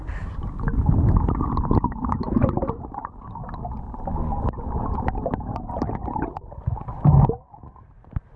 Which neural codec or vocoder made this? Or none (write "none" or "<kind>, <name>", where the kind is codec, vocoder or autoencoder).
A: none